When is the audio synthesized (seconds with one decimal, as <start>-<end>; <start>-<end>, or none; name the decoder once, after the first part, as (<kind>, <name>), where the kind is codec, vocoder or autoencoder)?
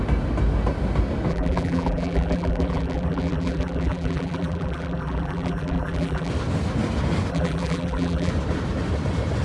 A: 1.3-6.3 (vocoder, BigVGAN v2); 7.3-8.3